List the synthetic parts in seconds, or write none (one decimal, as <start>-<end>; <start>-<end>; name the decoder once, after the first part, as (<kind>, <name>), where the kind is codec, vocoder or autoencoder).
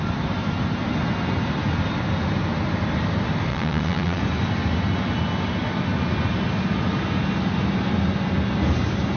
3.5-4.2 (vocoder, Vocos)